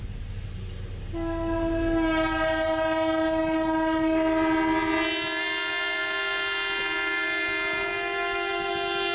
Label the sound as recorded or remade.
recorded